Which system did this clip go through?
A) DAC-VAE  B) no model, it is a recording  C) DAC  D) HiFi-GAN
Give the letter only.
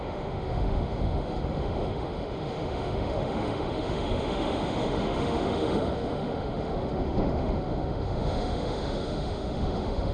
A